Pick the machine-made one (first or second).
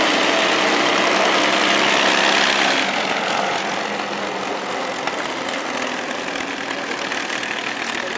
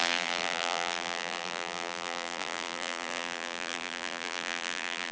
second